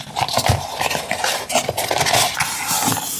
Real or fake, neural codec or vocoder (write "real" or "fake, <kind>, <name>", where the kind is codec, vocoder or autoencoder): real